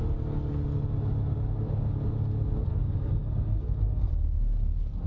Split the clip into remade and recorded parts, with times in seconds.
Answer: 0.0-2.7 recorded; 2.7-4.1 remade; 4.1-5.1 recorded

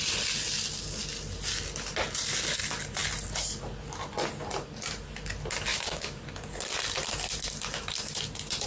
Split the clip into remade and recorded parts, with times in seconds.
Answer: 0.0-5.7 recorded; 5.7-6.2 remade; 6.2-8.7 recorded

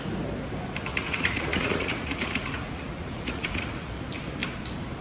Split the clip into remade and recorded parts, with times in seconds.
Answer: 0.0-0.9 recorded; 0.9-3.9 remade; 3.9-5.0 recorded